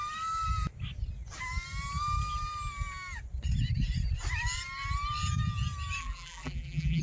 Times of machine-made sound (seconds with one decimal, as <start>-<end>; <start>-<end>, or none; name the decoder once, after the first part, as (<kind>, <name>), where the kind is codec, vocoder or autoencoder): 6.0-7.0 (vocoder, BigVGAN v2)